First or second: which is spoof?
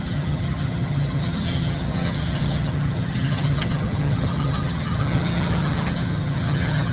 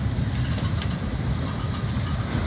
first